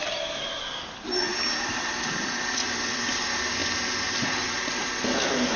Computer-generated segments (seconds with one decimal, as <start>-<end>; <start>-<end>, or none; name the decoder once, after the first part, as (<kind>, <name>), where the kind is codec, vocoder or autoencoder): none